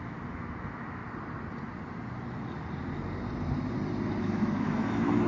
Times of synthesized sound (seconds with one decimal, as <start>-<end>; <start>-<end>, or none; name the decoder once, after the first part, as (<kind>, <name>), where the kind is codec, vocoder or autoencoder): 0.0-1.0 (autoencoder, DAC-VAE); 4.2-5.3